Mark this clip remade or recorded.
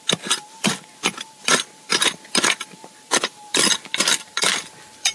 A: remade